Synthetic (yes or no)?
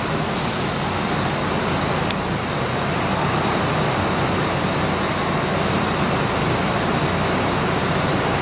no